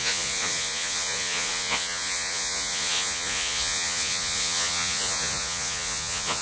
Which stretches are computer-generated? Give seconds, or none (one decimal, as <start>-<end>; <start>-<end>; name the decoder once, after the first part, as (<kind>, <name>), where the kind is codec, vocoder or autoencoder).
0.0-6.4 (vocoder, Vocos)